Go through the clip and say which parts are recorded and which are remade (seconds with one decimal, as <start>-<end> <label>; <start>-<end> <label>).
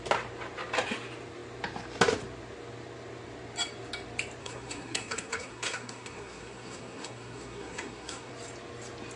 0.0-4.4 recorded; 4.4-8.3 remade; 8.3-9.2 recorded